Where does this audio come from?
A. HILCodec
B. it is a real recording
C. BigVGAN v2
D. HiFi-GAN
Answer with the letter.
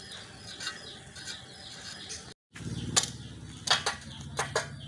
B